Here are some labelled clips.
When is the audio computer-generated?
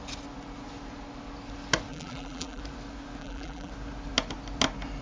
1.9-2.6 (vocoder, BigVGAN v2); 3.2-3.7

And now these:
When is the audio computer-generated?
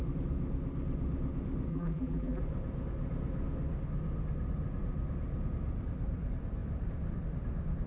1.7-2.4 (vocoder, BigVGAN v2)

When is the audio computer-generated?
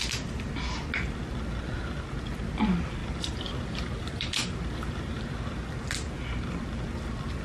3.0-5.2 (vocoder, BigVGAN v2)